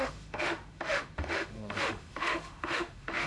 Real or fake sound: fake